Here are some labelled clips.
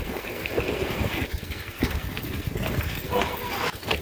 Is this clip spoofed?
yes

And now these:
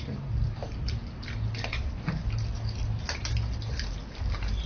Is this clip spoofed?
no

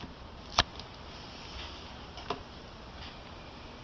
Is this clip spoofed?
no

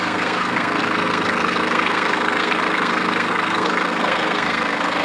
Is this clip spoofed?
yes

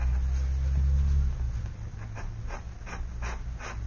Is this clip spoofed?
no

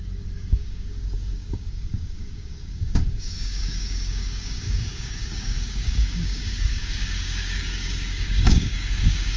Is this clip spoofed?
yes